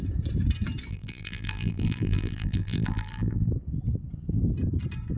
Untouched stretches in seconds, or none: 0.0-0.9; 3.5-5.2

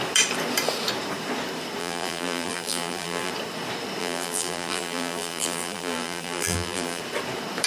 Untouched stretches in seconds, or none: 0.0-1.8; 3.3-4.0; 7.0-7.7

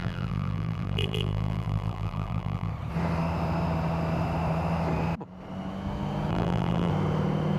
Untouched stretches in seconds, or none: 2.7-6.3; 6.9-7.6

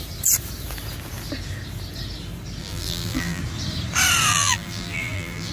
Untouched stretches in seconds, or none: 0.0-2.6; 3.4-4.3

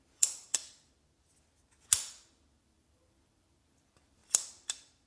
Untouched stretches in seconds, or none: 0.6-2.6; 4.2-5.1